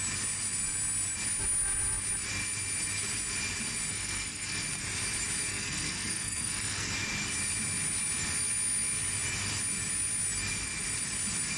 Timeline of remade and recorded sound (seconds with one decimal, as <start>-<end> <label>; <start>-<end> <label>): 0.0-3.9 recorded; 3.9-4.6 remade; 4.6-5.5 recorded; 5.5-6.9 remade; 6.9-11.6 recorded